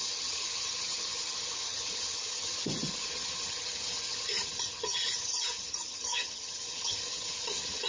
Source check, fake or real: fake